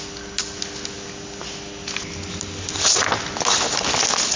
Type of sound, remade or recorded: recorded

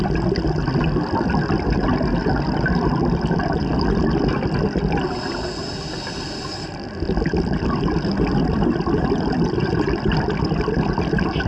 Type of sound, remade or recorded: recorded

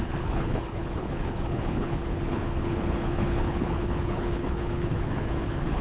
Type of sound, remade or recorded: remade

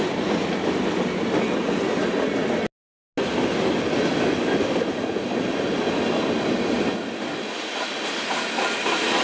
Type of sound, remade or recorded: recorded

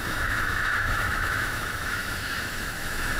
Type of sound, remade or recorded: remade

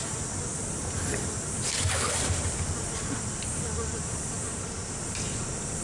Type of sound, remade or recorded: remade